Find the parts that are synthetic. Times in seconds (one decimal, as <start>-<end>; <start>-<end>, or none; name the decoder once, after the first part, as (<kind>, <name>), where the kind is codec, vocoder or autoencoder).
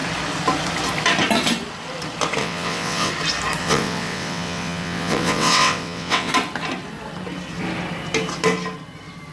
2.4-3.1 (vocoder, WaveNeXt); 3.6-6.3